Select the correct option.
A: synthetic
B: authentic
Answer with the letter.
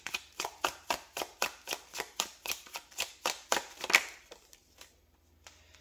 A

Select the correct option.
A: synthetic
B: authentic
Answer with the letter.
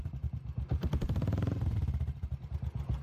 A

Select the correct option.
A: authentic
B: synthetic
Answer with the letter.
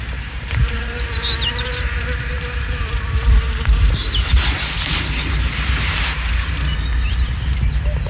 B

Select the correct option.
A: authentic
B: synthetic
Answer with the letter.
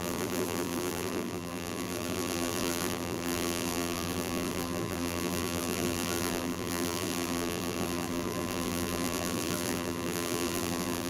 B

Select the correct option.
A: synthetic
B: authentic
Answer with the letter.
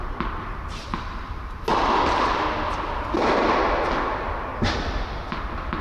B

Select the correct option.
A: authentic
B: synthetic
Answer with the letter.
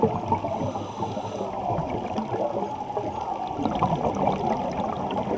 A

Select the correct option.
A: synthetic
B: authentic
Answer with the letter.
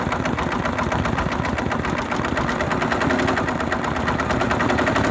B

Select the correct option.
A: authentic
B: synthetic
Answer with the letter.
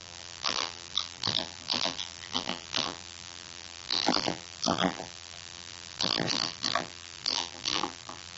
B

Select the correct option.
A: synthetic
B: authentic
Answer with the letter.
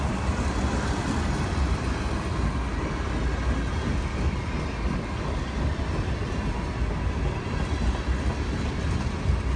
B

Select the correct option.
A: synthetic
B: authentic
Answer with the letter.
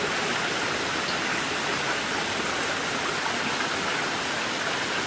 B